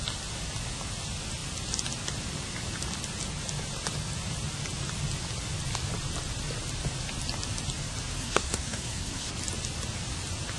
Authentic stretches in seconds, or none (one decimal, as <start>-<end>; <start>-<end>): 0.0-8.2; 9.3-10.6